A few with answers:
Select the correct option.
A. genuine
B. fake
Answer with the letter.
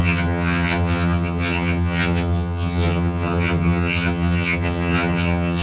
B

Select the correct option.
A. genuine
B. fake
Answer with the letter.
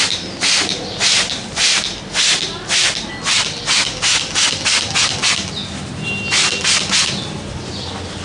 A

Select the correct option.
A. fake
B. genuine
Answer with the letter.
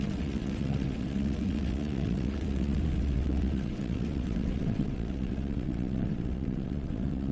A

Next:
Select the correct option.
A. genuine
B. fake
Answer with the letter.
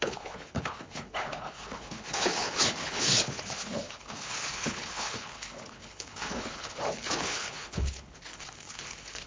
B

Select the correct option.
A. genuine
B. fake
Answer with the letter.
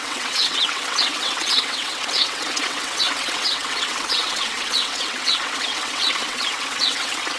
B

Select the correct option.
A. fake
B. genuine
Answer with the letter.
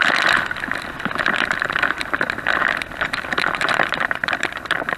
A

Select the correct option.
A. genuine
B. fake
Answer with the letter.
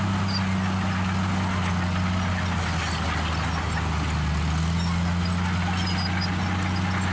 A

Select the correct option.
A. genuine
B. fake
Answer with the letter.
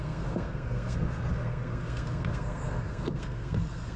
B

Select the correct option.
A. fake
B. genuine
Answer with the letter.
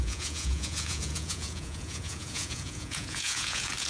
A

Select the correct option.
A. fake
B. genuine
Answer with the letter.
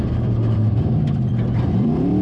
A